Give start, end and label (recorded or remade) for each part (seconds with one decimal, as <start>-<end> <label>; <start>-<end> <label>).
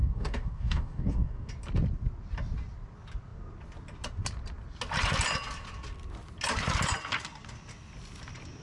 0.0-1.5 remade; 1.5-8.6 recorded